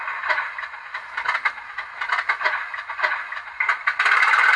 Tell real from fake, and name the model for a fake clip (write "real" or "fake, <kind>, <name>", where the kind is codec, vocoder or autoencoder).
real